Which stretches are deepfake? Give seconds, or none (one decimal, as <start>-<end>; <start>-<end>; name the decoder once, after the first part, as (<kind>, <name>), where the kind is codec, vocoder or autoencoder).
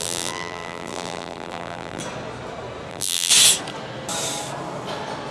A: 0.0-2.0 (vocoder, BigVGAN v2); 2.9-3.3